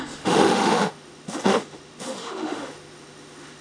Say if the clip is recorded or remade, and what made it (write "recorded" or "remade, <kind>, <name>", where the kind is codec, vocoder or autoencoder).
remade, autoencoder, DAC-VAE